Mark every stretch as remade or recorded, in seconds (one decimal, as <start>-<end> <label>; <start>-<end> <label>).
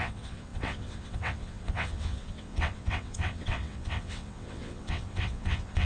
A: 0.0-5.9 remade